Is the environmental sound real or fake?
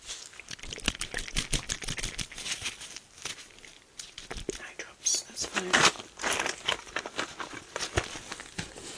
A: real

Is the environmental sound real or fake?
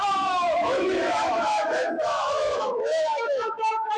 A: fake